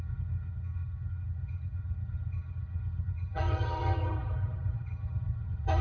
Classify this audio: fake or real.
fake